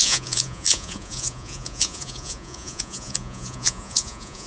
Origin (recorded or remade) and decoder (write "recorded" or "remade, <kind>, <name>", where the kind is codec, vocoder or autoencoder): remade, vocoder, Vocos